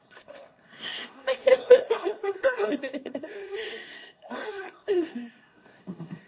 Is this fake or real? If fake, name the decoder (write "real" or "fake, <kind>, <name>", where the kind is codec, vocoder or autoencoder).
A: fake, codec, SNAC